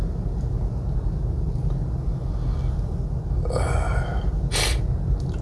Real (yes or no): yes